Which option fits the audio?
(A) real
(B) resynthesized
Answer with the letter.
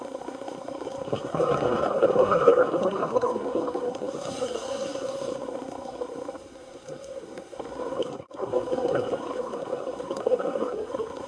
B